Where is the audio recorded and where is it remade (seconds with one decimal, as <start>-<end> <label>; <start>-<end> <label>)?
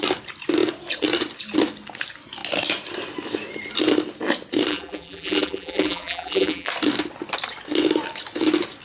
0.0-4.7 recorded; 4.7-6.7 remade; 6.7-8.8 recorded